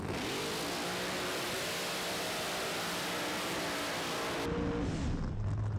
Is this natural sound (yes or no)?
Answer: yes